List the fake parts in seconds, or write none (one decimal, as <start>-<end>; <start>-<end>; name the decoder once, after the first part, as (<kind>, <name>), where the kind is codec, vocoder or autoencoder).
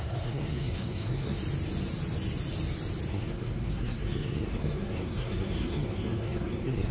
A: 0.0-1.4 (codec, SNAC); 3.1-6.9